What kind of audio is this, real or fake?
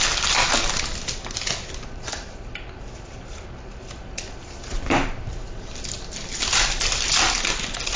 real